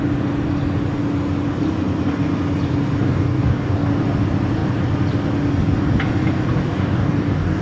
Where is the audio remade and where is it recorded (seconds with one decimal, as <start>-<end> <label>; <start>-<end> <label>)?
0.0-3.0 recorded; 3.0-3.9 remade; 3.9-6.6 recorded; 6.6-7.6 remade